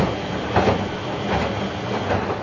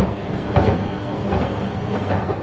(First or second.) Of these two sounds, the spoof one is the second